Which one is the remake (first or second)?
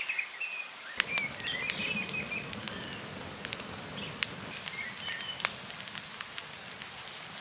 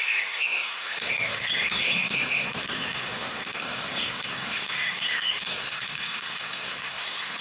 second